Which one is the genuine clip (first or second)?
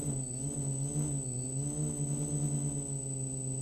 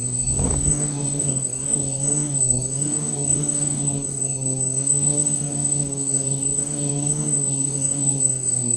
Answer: first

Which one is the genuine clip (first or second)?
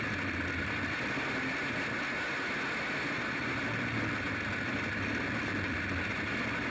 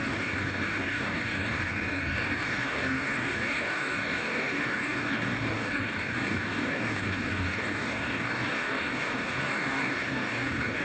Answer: first